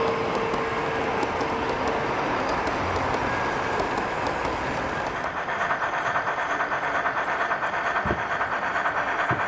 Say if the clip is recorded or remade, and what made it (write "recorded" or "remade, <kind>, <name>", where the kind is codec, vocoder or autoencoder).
recorded